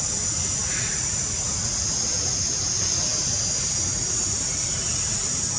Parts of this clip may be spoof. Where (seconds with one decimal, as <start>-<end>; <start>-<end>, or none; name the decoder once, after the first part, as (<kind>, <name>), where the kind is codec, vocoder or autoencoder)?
none